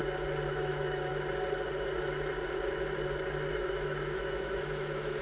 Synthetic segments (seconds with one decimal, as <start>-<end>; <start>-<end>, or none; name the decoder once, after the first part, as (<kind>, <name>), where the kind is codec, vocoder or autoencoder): 0.5-1.1 (autoencoder, DAC-VAE); 3.5-5.2